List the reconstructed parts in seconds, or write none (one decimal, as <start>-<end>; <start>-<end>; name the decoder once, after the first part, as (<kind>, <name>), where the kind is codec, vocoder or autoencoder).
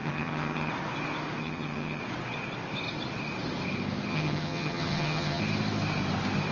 0.0-0.7 (vocoder, HiFi-GAN); 1.4-2.0; 4.1-5.4